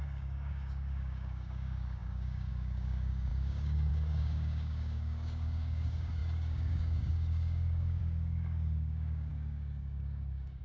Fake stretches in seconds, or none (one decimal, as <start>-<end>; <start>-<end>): 0.0-10.6